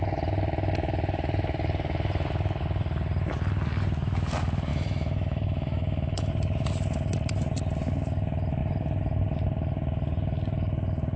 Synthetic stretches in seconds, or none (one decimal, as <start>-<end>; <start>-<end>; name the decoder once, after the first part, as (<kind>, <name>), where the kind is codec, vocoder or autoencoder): 4.7-6.3 (autoencoder, DAC-VAE)